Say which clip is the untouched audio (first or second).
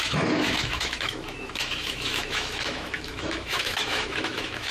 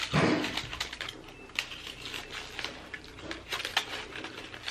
second